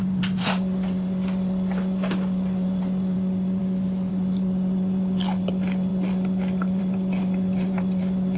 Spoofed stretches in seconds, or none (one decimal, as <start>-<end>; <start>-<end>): 3.6-4.1